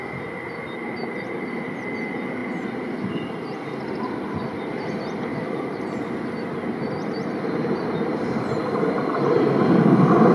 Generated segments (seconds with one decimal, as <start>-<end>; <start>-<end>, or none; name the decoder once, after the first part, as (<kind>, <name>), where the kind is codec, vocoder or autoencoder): 5.3-8.4 (vocoder, BigVGAN v2)